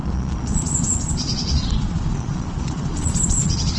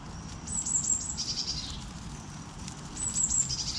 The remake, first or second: first